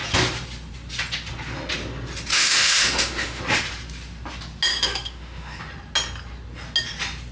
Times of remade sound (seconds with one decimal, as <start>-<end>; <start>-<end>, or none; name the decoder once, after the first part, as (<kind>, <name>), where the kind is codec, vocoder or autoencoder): 2.3-3.4 (autoencoder, DAC-VAE); 4.7-5.6